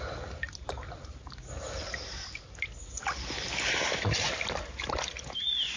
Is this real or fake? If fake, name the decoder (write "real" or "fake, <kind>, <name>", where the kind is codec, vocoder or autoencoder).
real